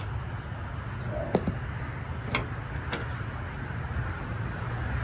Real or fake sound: real